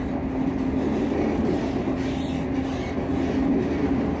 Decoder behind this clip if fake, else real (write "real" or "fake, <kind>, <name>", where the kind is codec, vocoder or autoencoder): real